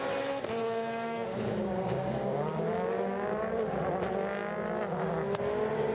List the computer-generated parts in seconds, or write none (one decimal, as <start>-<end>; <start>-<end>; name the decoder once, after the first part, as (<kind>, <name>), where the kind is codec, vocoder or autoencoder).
0.6-3.5 (codec, DAC)